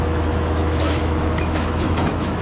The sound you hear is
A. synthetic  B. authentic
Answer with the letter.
A